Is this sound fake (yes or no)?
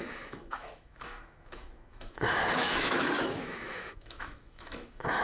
yes